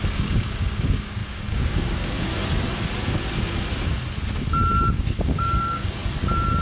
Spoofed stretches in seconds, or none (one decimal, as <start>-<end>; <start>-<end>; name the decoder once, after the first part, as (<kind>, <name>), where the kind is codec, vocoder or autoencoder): 0.0-2.3 (codec, DAC); 4.9-6.0